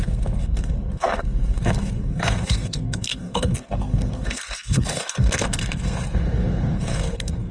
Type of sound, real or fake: fake